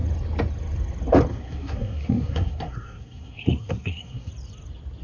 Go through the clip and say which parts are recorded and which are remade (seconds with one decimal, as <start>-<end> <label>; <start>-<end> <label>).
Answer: 0.0-1.3 recorded; 1.3-4.3 remade; 4.3-5.0 recorded